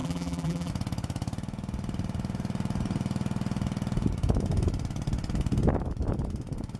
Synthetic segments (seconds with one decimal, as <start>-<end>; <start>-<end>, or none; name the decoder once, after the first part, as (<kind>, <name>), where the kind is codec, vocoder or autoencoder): 0.0-0.7 (vocoder, BigVGAN v2)

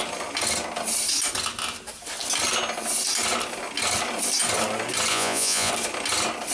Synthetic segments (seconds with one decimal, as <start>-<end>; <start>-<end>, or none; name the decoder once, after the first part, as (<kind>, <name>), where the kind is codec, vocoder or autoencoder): 5.1-5.7 (vocoder, Vocos)

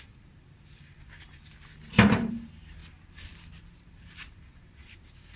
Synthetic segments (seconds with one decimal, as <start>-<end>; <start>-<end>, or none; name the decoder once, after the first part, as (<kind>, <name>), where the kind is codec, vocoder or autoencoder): 0.0-1.5 (vocoder, BigVGAN v2); 2.2-2.8; 3.7-5.4

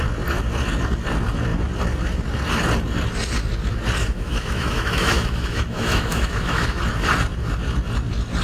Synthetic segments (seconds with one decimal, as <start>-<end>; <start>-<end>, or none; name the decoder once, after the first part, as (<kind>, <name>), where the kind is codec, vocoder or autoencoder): 4.0-6.8 (autoencoder, DAC-VAE)

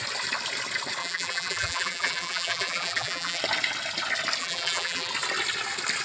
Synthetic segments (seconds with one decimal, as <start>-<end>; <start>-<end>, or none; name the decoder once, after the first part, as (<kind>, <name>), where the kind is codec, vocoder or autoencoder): 1.0-3.4 (vocoder, BigVGAN v2); 4.4-5.1

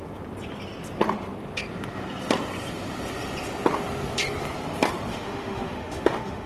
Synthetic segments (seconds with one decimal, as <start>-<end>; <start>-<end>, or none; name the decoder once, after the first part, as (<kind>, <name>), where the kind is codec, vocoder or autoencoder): 5.1-6.5 (autoencoder, DAC-VAE)